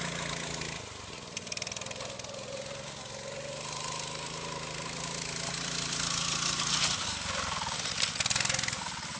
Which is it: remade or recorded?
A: recorded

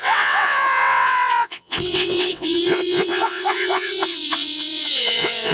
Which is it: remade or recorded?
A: remade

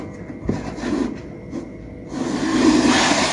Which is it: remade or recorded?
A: recorded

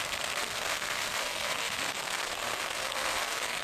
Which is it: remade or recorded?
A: remade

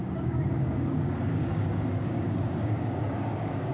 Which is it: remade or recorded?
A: remade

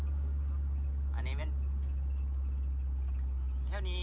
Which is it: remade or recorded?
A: recorded